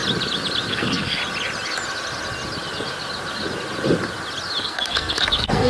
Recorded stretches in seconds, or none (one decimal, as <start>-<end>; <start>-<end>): 0.0-0.7; 1.2-4.6